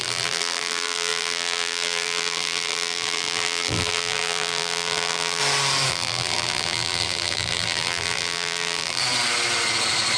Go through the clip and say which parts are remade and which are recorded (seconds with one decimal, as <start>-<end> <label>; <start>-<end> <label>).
0.0-5.4 remade; 5.4-5.9 recorded; 5.9-9.0 remade; 9.0-10.2 recorded